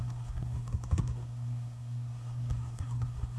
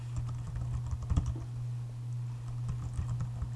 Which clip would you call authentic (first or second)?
second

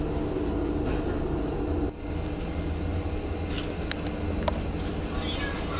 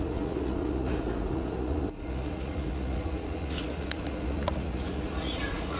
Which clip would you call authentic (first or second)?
first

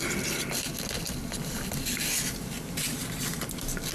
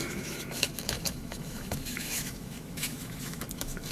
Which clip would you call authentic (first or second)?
first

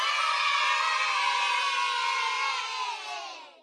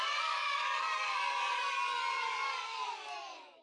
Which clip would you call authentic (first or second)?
first